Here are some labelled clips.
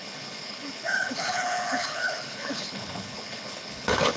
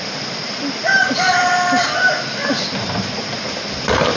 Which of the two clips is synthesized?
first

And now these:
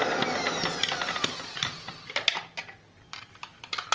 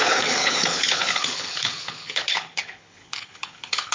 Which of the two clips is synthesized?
second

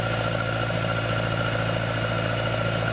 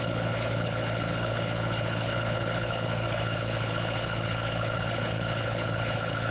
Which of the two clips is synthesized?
second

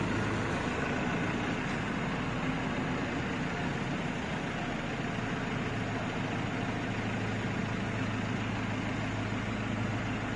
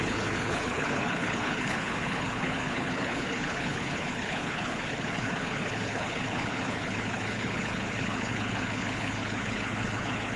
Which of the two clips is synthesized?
second